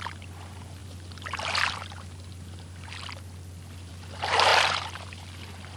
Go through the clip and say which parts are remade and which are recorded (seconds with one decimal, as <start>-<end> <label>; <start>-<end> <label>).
0.0-0.8 recorded; 0.8-3.9 remade; 3.9-4.5 recorded; 4.5-5.8 remade